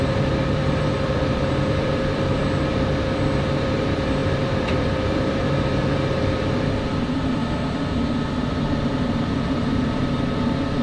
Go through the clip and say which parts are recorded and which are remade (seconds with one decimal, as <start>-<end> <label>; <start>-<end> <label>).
0.0-2.4 remade; 2.4-3.4 recorded; 3.4-7.4 remade; 7.4-8.4 recorded; 8.4-10.8 remade